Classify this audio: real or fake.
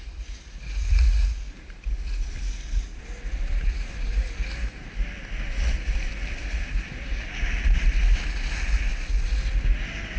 real